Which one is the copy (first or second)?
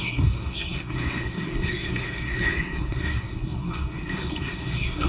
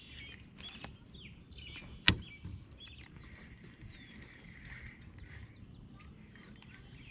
first